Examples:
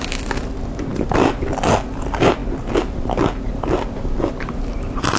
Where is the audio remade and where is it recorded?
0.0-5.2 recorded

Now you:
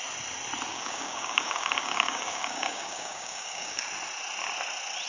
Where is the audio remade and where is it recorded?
0.0-0.7 recorded; 0.7-3.8 remade; 3.8-5.1 recorded

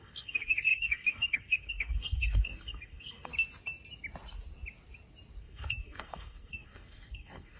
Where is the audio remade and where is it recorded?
0.0-3.3 remade; 3.3-5.4 recorded; 5.4-7.6 remade